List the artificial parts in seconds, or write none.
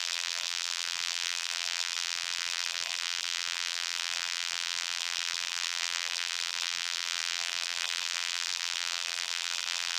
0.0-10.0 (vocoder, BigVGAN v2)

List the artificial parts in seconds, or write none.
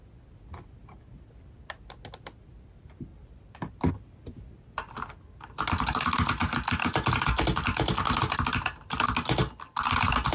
3.1-3.9 (vocoder, BigVGAN v2)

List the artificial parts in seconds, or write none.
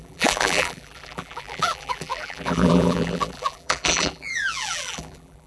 0.0-5.5 (vocoder, BigVGAN v2)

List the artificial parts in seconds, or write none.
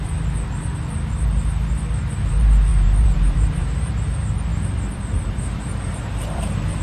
2.7-4.1 (vocoder, BigVGAN v2); 4.5-6.8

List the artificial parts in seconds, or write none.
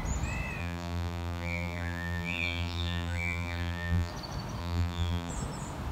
0.6-4.1 (vocoder, BigVGAN v2); 4.6-5.3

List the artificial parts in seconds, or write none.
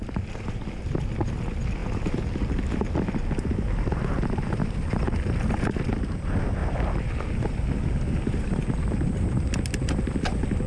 none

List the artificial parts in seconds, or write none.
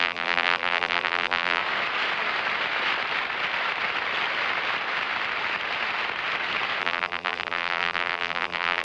0.0-1.6 (vocoder, BigVGAN v2); 6.8-8.8